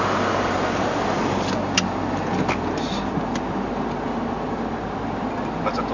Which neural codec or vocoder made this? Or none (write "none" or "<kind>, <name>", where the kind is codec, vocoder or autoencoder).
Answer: none